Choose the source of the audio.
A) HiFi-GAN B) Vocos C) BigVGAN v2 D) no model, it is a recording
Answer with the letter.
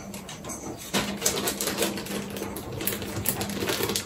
D